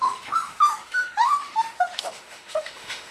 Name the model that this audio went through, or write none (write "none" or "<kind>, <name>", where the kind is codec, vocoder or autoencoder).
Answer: autoencoder, DAC-VAE